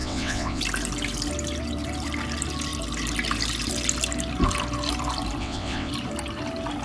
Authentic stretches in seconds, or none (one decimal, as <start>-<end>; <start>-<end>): 0.6-5.4; 5.9-6.8